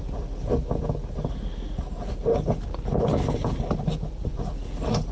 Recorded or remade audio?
recorded